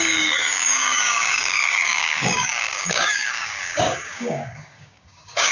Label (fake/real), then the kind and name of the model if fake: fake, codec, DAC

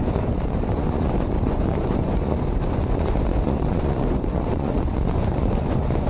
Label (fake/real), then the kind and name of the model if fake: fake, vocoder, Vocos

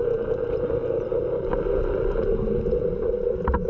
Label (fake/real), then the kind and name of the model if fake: real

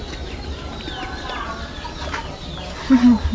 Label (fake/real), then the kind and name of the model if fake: real